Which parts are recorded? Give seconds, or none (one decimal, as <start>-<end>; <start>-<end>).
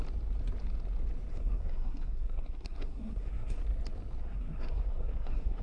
0.0-1.3; 3.6-4.2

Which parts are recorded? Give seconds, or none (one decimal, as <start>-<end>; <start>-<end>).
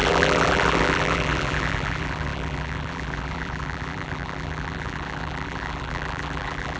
none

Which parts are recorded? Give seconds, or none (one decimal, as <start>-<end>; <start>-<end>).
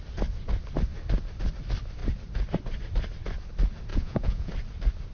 0.0-3.9; 4.5-5.1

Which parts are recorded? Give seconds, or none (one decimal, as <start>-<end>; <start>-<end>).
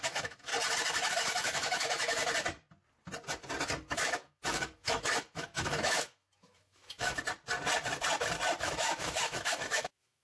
0.5-1.1; 2.2-3.9; 7.2-8.6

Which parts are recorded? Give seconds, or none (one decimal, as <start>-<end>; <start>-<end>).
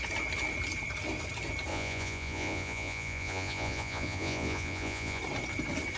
0.0-1.7; 5.2-6.0